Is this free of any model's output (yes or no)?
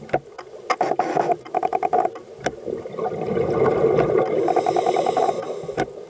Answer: yes